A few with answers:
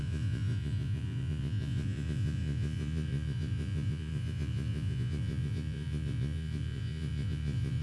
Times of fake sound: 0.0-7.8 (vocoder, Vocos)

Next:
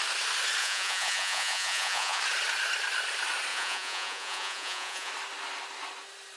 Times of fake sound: 0.6-2.2 (vocoder, Vocos); 3.5-5.1

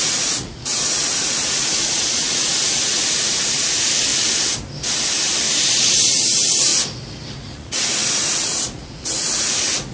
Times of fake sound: 0.0-4.1 (vocoder, Vocos); 5.9-6.7; 7.3-9.9